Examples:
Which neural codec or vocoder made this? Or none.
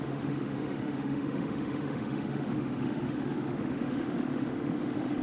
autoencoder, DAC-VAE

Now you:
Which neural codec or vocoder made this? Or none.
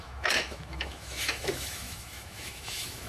autoencoder, DAC-VAE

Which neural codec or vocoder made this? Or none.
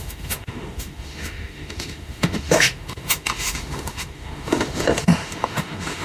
autoencoder, DAC-VAE